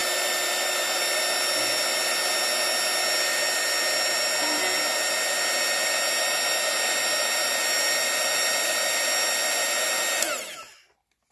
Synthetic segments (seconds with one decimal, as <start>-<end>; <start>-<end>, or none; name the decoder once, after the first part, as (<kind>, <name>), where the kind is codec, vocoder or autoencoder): none

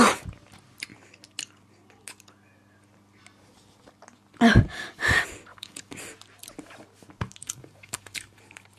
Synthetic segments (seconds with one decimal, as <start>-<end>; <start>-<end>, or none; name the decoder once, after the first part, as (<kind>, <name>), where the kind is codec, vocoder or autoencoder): 5.5-6.0 (codec, DAC); 7.4-8.4

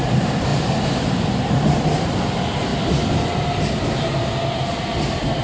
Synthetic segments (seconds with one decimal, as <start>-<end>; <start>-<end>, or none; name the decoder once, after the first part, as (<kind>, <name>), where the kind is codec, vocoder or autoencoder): none

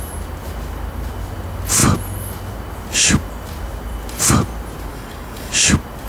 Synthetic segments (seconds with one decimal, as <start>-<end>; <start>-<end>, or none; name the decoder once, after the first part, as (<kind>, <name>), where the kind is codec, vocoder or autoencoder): 4.9-5.5 (codec, DAC)